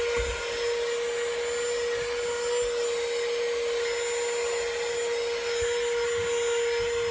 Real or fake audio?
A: real